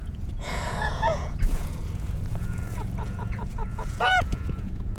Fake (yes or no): yes